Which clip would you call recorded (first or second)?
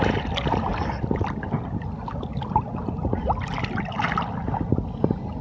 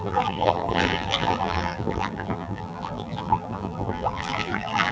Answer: first